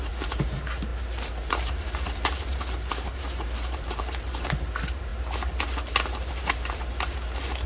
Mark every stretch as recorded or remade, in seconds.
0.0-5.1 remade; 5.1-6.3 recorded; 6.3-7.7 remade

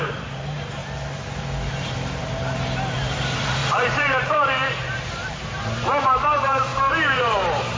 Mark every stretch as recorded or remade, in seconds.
0.0-0.8 remade; 0.8-1.7 recorded; 1.7-7.8 remade